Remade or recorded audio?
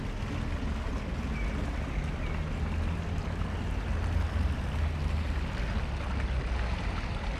recorded